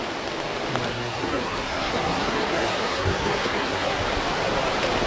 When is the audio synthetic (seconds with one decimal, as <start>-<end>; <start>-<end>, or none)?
0.9-4.0